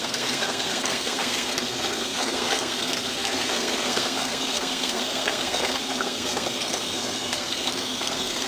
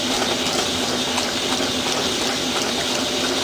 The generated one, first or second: first